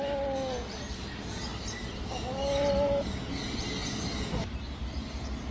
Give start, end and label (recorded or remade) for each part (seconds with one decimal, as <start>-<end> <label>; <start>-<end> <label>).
0.0-1.5 recorded; 1.5-2.7 remade; 2.7-3.8 recorded; 3.8-4.6 remade; 4.6-5.5 recorded